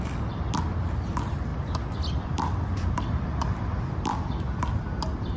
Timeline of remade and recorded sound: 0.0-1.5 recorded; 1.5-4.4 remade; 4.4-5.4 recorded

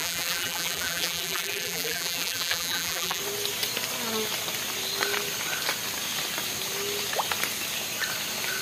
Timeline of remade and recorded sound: 0.0-3.2 remade; 3.2-8.6 recorded

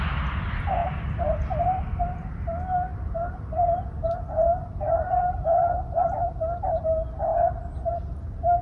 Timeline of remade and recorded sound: 0.0-4.5 recorded; 4.5-6.0 remade; 6.0-8.6 recorded

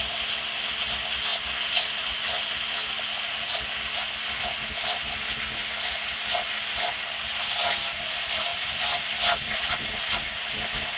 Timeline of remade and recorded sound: 0.0-8.5 recorded; 8.5-9.7 remade; 9.7-11.0 recorded

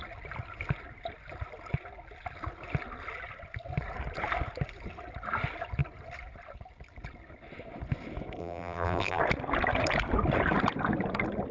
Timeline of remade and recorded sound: 0.0-8.4 recorded; 8.4-9.2 remade; 9.2-11.5 recorded